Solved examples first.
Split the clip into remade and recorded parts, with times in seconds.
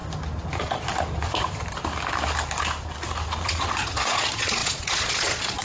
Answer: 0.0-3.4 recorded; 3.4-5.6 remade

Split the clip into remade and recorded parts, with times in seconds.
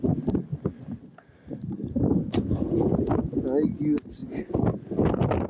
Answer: 0.0-5.5 recorded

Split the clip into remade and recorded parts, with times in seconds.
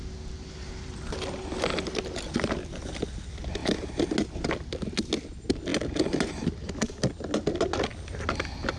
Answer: 0.0-8.8 recorded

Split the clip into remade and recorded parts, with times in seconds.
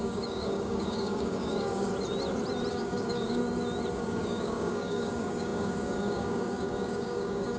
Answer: 0.0-1.9 remade; 1.9-2.7 recorded; 2.7-3.4 remade; 3.4-3.9 recorded; 3.9-7.6 remade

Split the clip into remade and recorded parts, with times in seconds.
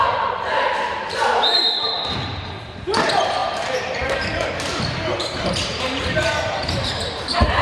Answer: 0.0-7.6 remade